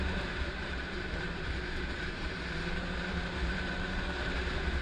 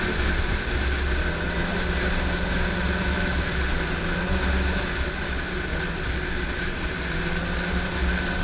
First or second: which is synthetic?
first